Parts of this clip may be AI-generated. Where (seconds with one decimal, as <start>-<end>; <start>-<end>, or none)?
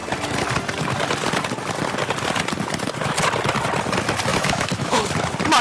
4.3-5.0